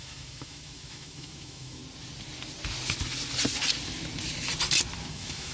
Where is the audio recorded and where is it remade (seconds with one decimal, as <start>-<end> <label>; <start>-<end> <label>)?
0.0-1.8 remade; 1.8-5.1 recorded; 5.1-5.5 remade